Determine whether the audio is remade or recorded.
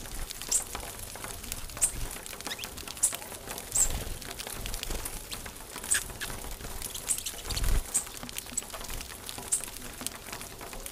recorded